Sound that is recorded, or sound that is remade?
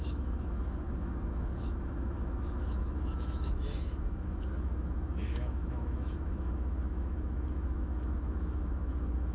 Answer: remade